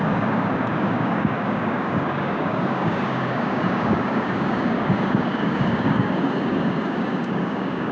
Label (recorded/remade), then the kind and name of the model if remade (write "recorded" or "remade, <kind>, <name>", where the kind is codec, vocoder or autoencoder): remade, codec, DAC